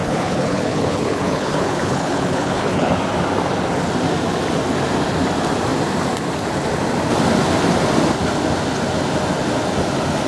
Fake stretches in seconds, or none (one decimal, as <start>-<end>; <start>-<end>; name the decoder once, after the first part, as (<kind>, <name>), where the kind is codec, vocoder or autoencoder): 0.0-2.9 (codec, HILCodec)